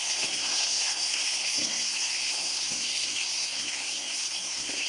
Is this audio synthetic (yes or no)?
yes